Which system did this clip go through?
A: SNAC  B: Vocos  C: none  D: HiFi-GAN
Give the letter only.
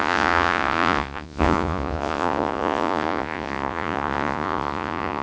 B